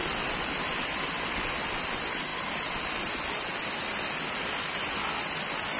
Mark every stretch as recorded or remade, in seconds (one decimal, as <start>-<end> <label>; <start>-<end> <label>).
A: 0.0-5.8 recorded